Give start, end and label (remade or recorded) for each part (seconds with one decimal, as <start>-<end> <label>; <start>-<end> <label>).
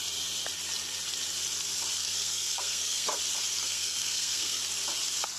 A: 0.0-2.0 recorded; 2.0-3.2 remade; 3.2-3.6 recorded; 3.6-4.6 remade; 4.6-5.4 recorded